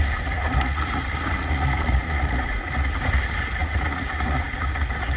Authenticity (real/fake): fake